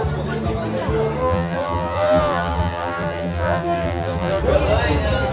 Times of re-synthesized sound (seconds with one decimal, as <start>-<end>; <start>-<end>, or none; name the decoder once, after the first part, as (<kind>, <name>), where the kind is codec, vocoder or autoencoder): 1.2-4.4 (vocoder, BigVGAN v2)